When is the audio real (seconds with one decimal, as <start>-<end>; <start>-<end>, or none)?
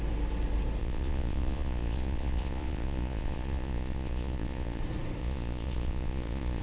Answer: 0.0-0.8; 4.8-5.2